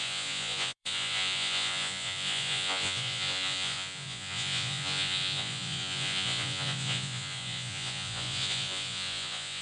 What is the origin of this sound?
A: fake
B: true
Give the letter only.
A